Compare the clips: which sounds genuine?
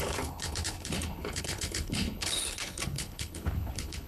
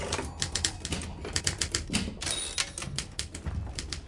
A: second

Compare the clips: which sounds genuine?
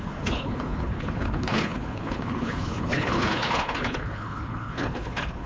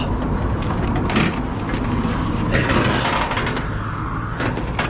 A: second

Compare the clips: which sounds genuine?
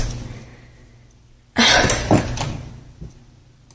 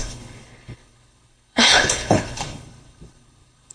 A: first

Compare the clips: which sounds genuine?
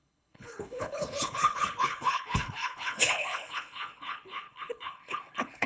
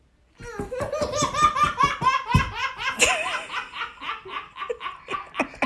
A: second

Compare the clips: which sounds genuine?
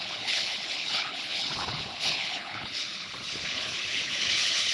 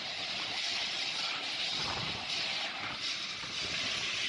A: second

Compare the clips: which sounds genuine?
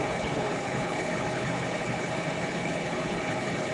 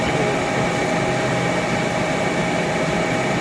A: second